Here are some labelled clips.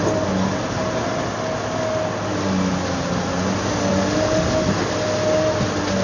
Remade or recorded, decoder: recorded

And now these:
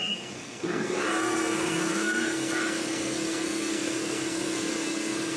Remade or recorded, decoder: remade, codec, SNAC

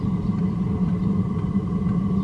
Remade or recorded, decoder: remade, vocoder, BigVGAN v2